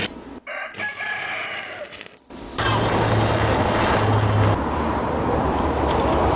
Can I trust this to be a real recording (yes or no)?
yes